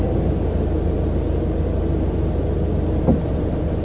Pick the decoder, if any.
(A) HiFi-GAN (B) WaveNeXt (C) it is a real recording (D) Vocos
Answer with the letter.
C